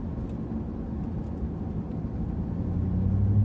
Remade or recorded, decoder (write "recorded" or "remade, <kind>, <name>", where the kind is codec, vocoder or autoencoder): recorded